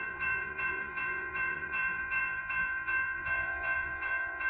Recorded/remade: remade